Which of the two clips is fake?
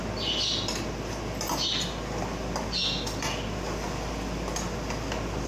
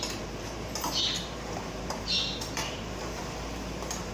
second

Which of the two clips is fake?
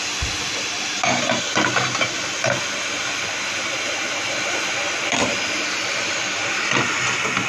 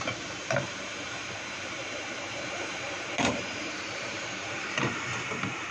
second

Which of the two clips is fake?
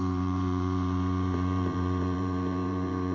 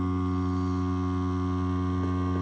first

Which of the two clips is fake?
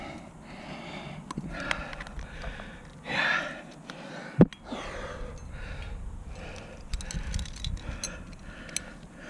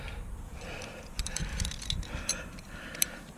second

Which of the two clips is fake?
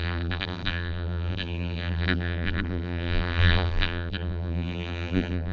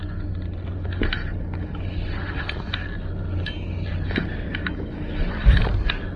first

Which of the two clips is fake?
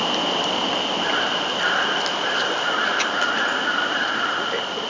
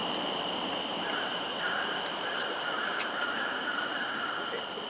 second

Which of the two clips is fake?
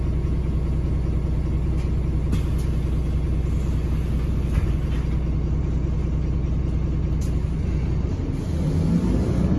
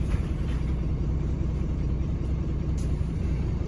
second